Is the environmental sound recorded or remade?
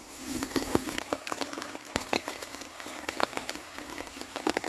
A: remade